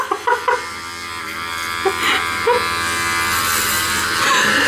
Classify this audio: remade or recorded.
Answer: recorded